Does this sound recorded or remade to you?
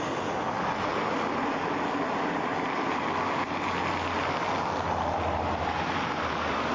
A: recorded